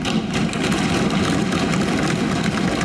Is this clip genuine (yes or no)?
yes